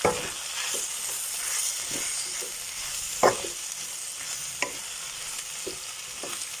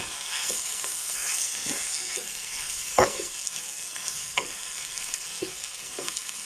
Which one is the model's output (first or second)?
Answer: second